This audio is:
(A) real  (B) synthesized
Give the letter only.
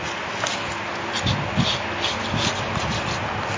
A